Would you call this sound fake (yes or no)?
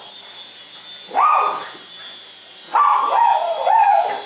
no